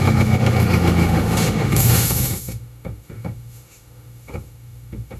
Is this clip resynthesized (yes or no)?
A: yes